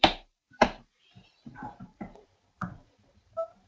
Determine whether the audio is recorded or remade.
remade